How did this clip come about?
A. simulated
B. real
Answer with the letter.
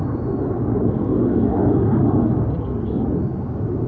B